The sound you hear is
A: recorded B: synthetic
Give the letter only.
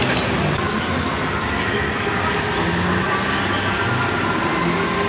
A